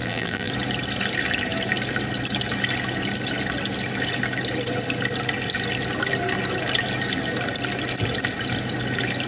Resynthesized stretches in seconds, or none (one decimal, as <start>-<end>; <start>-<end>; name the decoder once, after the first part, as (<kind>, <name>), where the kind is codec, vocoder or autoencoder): 0.0-0.5 (vocoder, BigVGAN v2)